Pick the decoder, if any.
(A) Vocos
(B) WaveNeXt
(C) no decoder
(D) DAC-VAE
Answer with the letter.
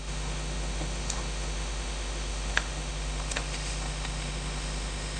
D